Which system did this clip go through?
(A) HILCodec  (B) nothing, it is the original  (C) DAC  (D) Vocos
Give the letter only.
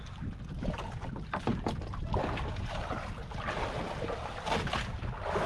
B